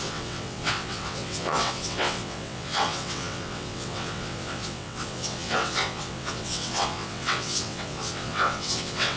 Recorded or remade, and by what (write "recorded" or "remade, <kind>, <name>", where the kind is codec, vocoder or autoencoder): remade, vocoder, WaveNeXt